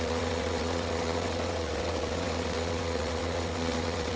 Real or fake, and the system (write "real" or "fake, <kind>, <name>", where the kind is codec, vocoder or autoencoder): fake, vocoder, WaveNeXt